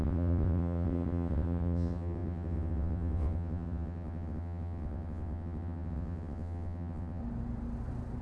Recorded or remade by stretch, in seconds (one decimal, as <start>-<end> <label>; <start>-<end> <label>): 0.0-7.2 remade; 7.2-8.2 recorded